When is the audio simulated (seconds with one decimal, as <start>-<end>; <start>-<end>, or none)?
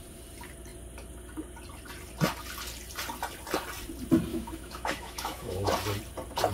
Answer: 4.3-5.7